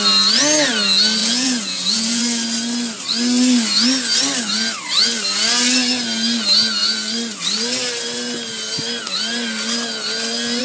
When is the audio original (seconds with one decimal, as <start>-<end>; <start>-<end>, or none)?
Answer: 0.0-1.2; 2.2-10.6